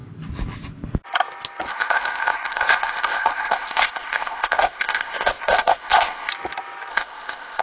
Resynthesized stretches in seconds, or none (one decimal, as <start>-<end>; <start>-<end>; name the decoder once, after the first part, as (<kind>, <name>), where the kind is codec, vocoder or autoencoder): 1.7-6.3 (codec, ZipCodec); 6.9-7.6